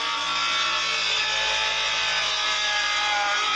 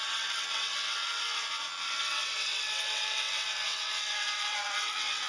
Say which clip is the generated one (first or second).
second